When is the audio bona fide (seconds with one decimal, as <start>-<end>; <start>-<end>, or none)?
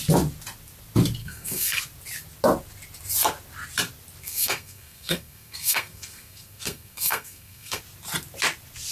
0.0-1.2; 1.8-4.2; 7.8-8.9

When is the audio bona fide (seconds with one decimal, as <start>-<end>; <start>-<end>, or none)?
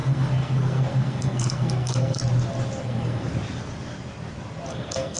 2.2-2.8; 3.3-4.7